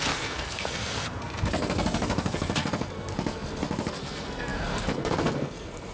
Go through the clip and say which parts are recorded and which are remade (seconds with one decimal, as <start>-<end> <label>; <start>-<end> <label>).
0.0-5.9 remade